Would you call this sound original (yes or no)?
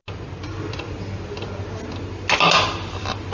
yes